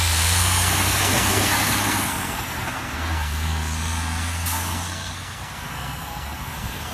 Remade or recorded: remade